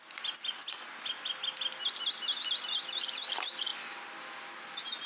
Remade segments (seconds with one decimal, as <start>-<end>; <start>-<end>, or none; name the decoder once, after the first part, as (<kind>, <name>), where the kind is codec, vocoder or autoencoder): none